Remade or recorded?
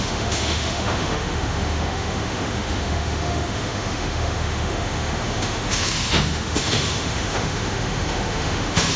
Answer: remade